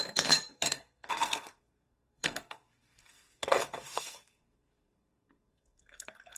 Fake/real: fake